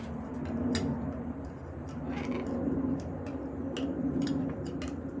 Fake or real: real